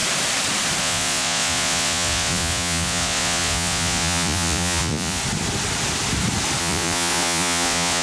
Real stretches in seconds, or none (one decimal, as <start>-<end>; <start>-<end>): 0.0-0.8; 5.2-6.6